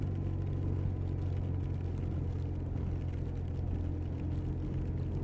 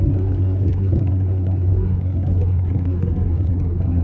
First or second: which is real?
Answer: first